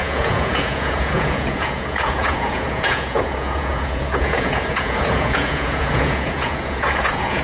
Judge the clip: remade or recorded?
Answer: remade